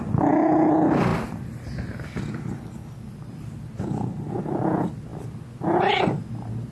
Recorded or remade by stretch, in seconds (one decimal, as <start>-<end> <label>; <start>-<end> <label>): 0.0-6.7 recorded